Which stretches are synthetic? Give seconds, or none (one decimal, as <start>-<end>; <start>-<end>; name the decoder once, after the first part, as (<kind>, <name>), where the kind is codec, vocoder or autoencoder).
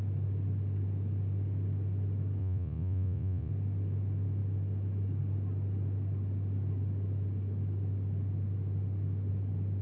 2.4-3.5 (vocoder, Vocos)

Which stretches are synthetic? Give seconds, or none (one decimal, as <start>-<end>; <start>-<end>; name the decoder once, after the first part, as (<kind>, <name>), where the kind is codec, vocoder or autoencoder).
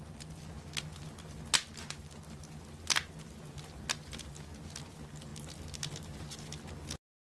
none